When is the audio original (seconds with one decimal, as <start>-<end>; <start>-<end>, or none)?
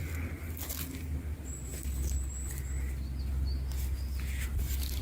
0.0-5.0